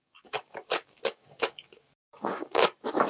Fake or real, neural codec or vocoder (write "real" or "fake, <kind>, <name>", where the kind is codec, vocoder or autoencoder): fake, codec, DAC